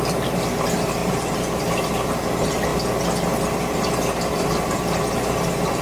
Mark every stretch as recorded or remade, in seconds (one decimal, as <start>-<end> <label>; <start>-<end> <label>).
0.0-1.0 recorded; 1.0-1.9 remade; 1.9-5.8 recorded